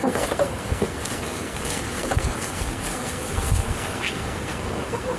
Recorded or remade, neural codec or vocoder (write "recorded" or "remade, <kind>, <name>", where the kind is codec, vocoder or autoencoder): remade, codec, SNAC